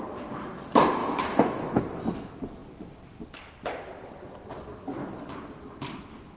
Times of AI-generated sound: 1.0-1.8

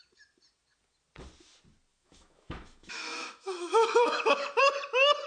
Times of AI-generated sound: 1.9-4.6